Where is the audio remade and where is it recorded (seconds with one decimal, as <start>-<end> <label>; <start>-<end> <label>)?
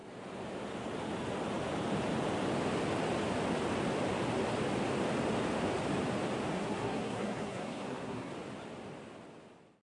0.0-6.5 recorded; 6.5-8.3 remade; 8.3-9.9 recorded